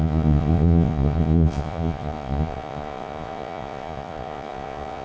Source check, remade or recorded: remade